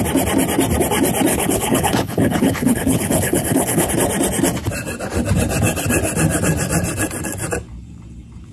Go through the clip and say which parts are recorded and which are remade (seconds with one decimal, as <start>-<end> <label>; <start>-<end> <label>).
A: 0.0-1.3 recorded; 1.3-3.9 remade; 3.9-8.5 recorded